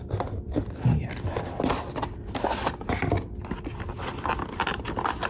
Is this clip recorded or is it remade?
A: recorded